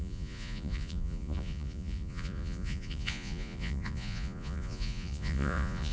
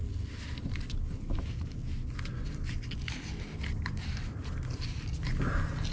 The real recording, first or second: second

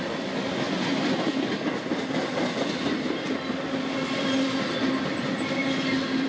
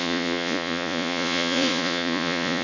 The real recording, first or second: first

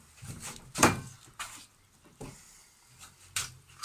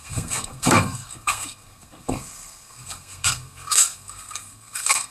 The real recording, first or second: first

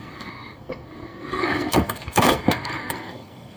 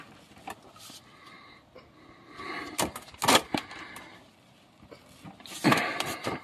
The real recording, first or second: second